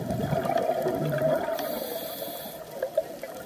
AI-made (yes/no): no